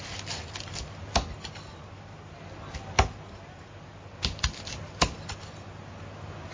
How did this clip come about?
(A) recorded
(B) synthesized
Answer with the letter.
A